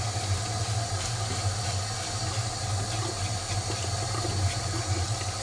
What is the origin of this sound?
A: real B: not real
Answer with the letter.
A